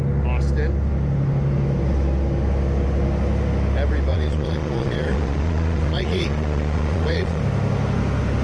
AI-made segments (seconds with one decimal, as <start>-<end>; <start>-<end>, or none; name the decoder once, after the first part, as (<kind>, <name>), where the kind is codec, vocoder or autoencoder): 4.1-7.4 (vocoder, Vocos)